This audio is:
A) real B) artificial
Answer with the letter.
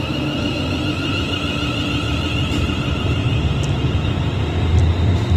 A